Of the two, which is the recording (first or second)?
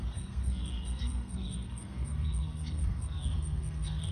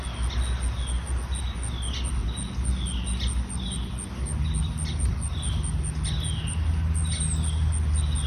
second